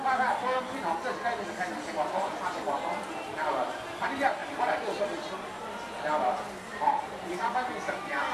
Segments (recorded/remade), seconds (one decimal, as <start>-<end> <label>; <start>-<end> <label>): 0.0-4.4 recorded; 4.4-5.0 remade; 5.0-6.7 recorded; 6.7-7.5 remade; 7.5-8.3 recorded